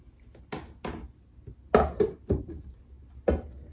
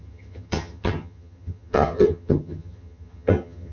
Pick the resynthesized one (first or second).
second